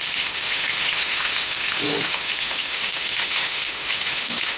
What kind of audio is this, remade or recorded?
remade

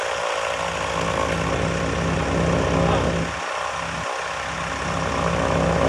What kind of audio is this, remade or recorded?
recorded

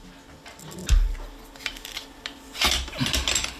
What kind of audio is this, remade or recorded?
recorded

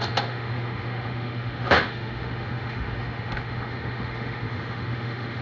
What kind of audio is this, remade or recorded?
remade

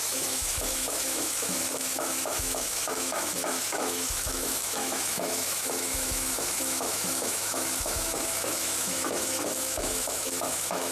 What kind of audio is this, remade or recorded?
remade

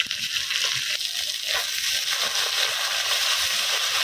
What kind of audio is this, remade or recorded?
recorded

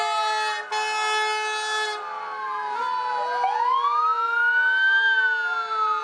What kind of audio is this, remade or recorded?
recorded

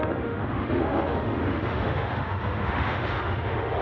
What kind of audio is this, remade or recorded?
remade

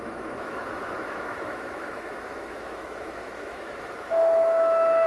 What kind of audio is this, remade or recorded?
remade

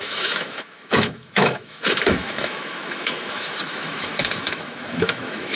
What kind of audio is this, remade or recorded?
remade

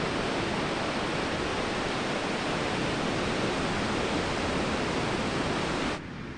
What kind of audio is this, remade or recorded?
recorded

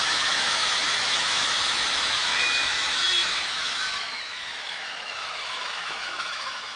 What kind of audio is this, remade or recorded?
remade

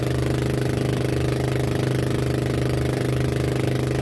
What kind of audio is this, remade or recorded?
recorded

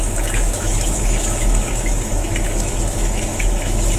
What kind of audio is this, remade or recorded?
remade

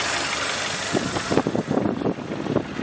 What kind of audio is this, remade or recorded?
recorded